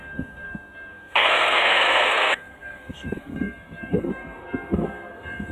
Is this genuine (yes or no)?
no